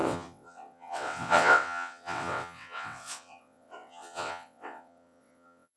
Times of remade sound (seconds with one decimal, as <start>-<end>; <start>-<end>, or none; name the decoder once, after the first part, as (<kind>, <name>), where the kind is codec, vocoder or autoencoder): 0.0-5.8 (vocoder, WaveNeXt)